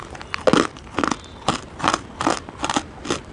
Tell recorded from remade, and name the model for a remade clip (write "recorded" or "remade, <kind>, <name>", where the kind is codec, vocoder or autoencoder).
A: recorded